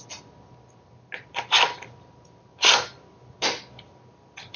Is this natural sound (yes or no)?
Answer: yes